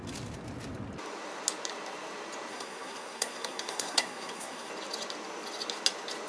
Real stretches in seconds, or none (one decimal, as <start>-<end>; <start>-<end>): 0.0-2.5; 4.7-6.3